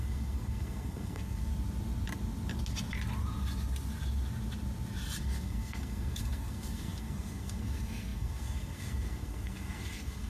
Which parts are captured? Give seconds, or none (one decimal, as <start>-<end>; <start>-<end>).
1.5-5.2

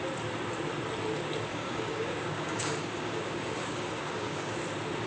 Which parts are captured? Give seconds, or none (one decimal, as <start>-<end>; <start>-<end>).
0.0-1.5; 4.6-5.1